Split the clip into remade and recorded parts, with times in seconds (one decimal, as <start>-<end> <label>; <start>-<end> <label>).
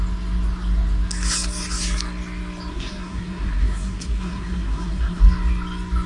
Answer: 0.0-2.7 recorded; 2.7-5.2 remade; 5.2-6.1 recorded